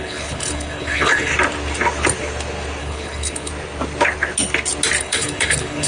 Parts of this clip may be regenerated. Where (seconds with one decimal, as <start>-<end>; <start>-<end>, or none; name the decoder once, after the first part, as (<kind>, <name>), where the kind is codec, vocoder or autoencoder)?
0.0-1.3 (codec, HILCodec); 2.8-3.5; 5.0-5.9